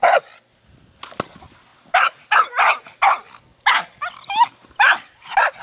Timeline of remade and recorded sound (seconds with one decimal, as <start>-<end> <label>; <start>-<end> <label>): 0.0-5.6 recorded